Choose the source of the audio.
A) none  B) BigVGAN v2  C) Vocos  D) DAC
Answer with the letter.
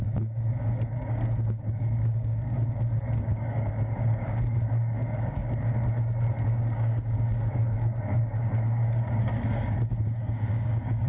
D